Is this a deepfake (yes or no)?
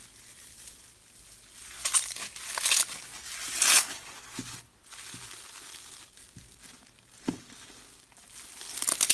no